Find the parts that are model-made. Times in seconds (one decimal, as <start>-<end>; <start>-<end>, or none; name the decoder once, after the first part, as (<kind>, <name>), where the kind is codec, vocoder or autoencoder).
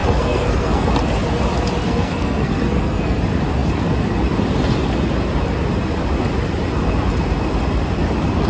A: 0.0-0.9 (codec, SNAC); 1.8-3.2